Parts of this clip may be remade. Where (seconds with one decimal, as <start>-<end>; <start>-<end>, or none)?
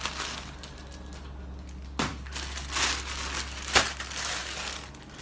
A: none